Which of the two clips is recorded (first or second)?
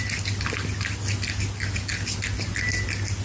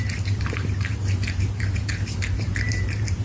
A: first